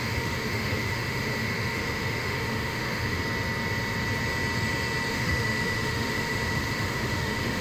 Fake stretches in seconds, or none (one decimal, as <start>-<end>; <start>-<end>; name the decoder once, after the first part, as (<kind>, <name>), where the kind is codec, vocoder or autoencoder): 0.0-3.2 (autoencoder, DAC-VAE); 5.1-7.6